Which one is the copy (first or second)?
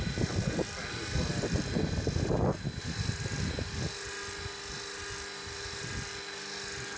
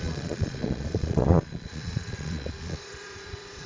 second